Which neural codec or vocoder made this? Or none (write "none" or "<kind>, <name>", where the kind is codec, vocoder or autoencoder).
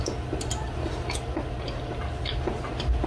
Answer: none